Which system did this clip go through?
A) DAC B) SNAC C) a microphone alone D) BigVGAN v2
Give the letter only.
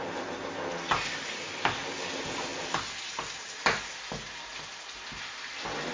C